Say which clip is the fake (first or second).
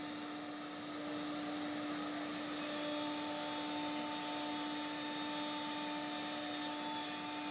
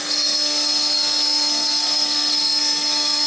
second